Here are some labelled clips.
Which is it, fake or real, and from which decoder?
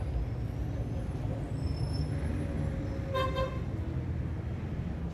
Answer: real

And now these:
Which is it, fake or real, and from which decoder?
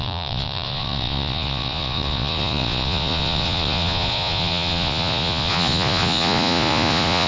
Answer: fake, vocoder, Vocos